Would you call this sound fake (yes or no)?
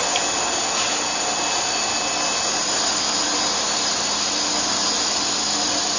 no